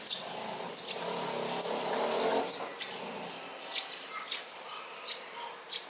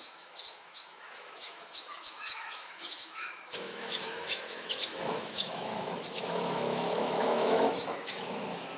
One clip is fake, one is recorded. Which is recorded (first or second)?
first